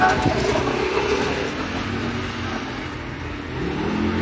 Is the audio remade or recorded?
recorded